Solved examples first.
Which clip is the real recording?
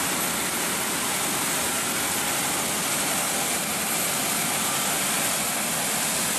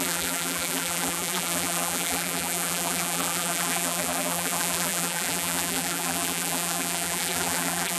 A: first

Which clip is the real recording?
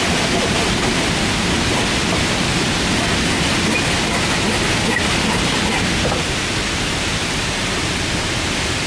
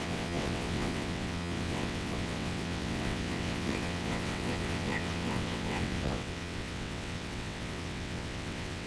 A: first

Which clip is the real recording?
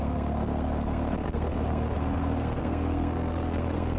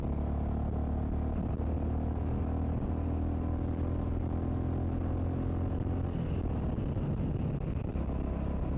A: second